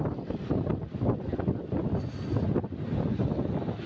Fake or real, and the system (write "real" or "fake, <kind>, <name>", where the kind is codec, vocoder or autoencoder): real